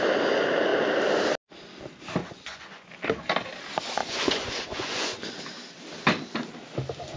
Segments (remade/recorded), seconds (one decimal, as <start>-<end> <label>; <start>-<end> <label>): 0.0-2.2 recorded; 2.2-2.9 remade; 2.9-4.0 recorded; 4.0-5.3 remade; 5.3-7.2 recorded